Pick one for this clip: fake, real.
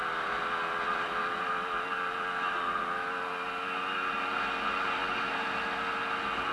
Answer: real